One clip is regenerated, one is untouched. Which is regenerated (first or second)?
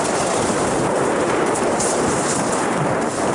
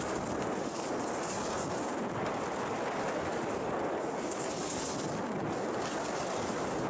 first